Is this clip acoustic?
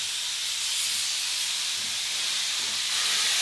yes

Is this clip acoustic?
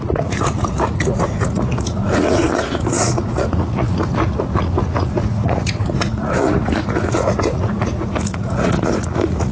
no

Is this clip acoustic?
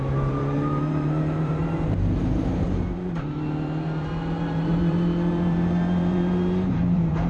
no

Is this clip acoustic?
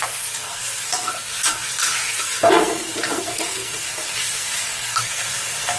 no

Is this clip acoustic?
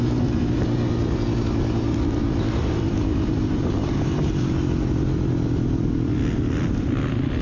yes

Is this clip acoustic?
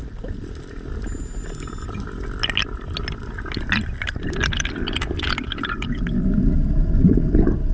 yes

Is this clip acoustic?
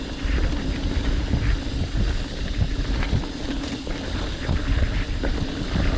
yes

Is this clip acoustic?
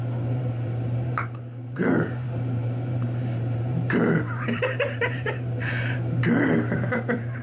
no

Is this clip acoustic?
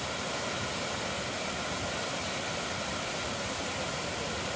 yes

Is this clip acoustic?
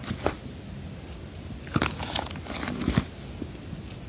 yes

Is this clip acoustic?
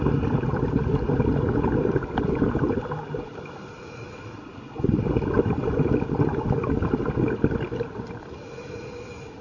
yes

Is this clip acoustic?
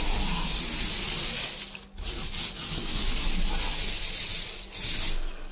yes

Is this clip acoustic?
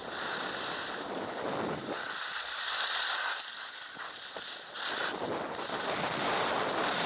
no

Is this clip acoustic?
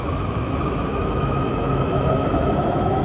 no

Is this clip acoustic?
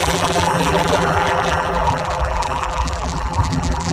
no